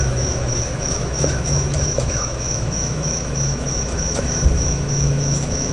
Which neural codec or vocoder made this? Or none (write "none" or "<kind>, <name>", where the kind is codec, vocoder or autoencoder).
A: autoencoder, DAC-VAE